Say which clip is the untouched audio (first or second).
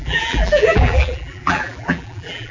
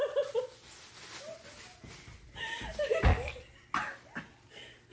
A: second